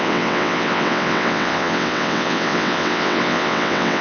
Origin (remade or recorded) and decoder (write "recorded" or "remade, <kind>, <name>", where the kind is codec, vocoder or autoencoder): remade, vocoder, WaveNeXt